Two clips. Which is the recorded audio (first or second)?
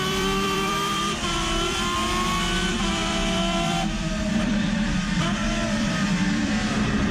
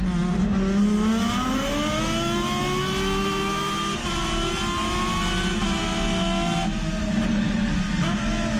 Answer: second